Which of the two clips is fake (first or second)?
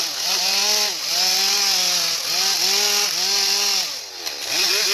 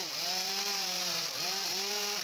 second